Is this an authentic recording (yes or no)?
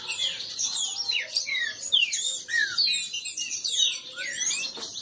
no